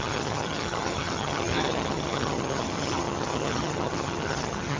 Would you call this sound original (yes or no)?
no